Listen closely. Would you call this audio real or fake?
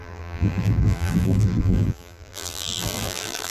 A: fake